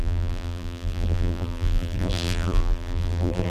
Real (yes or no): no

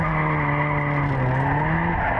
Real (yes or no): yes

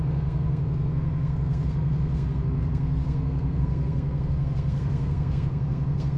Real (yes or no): no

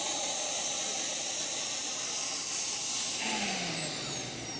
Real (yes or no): yes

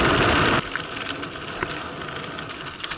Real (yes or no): yes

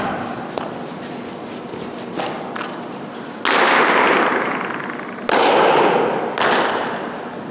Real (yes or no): yes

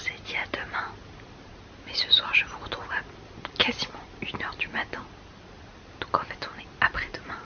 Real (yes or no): yes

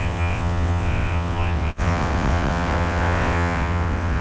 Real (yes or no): no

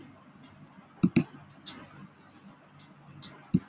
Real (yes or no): yes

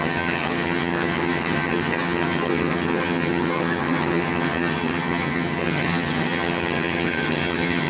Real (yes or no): no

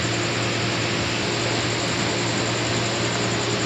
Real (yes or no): yes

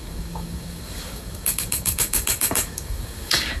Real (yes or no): no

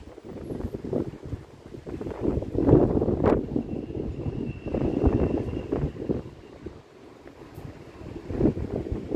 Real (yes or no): yes